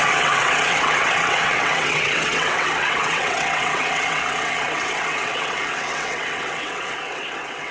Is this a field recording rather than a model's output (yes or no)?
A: no